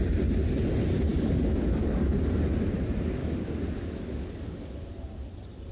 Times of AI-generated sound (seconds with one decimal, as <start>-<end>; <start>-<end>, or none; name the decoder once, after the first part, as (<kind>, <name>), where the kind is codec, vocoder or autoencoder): 1.1-2.2 (codec, DAC); 3.2-4.9